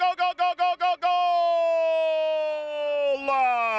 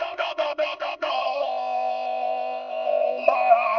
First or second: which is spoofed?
second